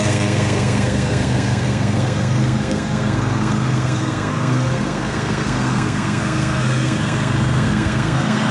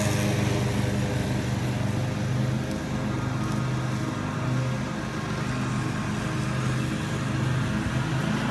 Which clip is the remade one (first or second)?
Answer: first